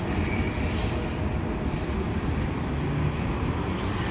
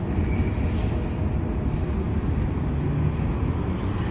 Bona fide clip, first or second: second